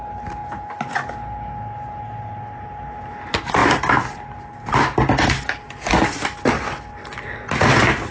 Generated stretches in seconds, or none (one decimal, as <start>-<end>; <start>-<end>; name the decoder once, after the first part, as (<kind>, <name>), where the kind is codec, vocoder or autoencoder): none